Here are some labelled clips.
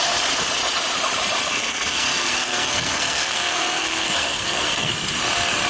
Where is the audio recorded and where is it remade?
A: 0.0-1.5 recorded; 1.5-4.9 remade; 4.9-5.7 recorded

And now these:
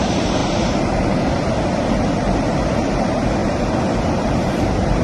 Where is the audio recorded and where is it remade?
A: 0.0-3.4 remade; 3.4-4.0 recorded; 4.0-5.0 remade

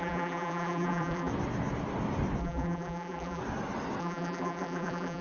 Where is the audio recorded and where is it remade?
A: 0.0-1.3 remade; 1.3-2.4 recorded; 2.4-3.4 remade; 3.4-4.0 recorded; 4.0-5.2 remade

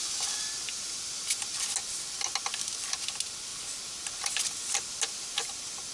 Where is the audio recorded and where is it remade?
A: 0.0-5.9 recorded